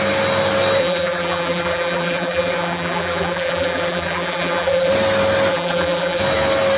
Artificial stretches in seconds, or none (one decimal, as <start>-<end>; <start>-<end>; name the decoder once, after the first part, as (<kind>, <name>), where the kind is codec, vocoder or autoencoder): 0.8-4.9 (vocoder, BigVGAN v2); 5.5-6.2